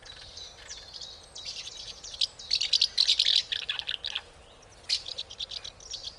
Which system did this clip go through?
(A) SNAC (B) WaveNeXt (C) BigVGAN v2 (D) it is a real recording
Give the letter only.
D